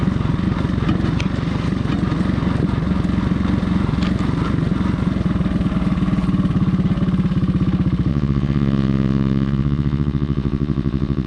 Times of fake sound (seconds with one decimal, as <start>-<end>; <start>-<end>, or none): 8.1-11.3